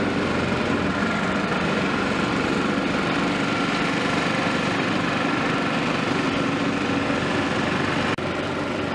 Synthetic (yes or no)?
yes